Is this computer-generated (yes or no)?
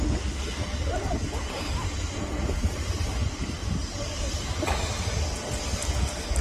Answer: no